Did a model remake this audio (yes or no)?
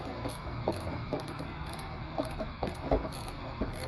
yes